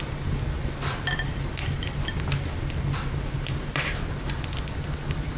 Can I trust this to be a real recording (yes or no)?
yes